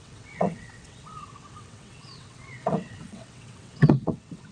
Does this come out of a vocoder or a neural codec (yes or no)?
yes